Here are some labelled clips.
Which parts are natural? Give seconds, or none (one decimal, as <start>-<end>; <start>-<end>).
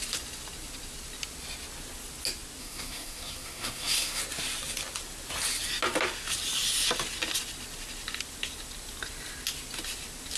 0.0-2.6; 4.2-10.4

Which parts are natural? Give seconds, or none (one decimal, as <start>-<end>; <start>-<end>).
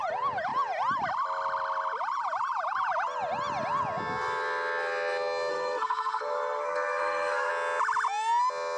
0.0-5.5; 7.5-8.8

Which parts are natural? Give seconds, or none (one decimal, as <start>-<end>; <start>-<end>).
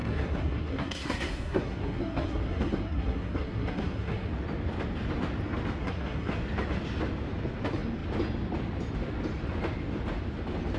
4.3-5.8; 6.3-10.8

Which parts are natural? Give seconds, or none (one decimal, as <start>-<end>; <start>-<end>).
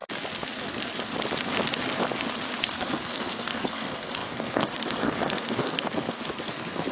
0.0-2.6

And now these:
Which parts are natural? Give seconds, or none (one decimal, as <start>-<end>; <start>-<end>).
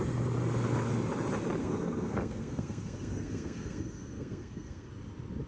0.0-1.6; 4.9-5.5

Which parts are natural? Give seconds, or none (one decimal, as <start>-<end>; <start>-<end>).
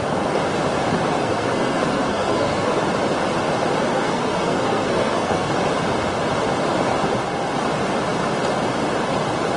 0.0-1.2; 2.8-3.9; 5.5-9.6